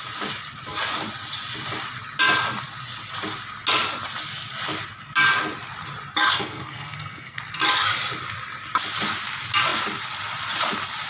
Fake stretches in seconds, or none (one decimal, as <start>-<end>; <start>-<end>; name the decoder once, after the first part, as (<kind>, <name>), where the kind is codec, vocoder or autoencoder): 6.3-7.4 (codec, SNAC)